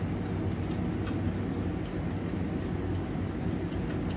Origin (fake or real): real